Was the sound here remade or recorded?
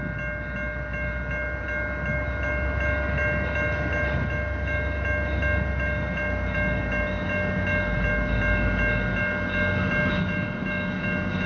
recorded